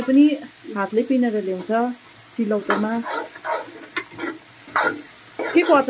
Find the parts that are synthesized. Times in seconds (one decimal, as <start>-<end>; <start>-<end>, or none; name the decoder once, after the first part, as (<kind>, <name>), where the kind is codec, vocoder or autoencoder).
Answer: none

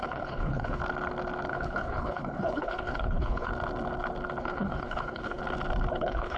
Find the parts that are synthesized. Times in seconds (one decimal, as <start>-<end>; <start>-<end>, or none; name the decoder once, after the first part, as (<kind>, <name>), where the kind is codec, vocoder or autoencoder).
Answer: 0.0-0.8 (codec, HILCodec); 1.5-3.5; 4.4-5.4; 5.9-6.4

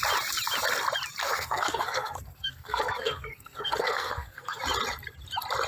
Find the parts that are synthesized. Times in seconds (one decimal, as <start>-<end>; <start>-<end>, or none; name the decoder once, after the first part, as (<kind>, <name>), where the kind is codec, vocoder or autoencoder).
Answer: 1.2-4.6 (codec, SNAC)

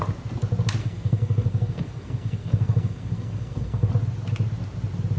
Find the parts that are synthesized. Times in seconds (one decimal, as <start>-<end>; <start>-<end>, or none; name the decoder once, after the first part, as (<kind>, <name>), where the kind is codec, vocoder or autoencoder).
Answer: 0.8-3.9 (codec, SNAC)

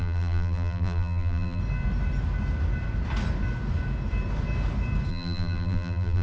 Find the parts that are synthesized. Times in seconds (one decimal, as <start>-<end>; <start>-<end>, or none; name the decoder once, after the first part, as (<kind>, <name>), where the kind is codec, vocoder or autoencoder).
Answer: 0.0-1.6 (vocoder, BigVGAN v2); 5.1-6.2

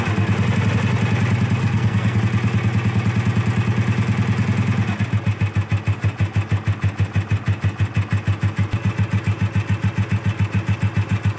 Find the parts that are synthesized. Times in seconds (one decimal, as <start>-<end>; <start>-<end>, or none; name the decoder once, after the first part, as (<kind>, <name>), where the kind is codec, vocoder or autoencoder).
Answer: 1.6-2.2 (codec, SNAC)